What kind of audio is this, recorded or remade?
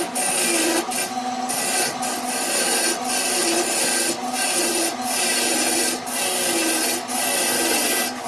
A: recorded